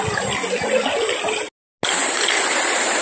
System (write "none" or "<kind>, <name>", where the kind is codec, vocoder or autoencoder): none